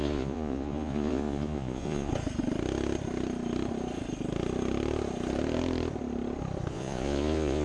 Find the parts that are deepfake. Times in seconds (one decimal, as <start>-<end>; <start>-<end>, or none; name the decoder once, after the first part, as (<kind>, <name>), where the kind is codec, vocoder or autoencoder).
0.0-2.1 (vocoder, Vocos); 6.7-7.6